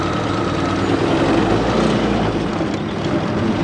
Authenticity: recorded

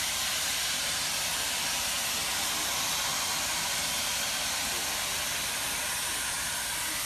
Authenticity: recorded